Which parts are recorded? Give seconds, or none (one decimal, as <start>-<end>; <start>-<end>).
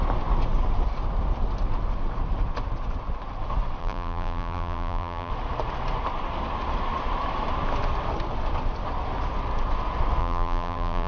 0.0-3.8; 5.3-10.2